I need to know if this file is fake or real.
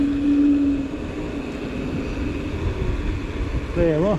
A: real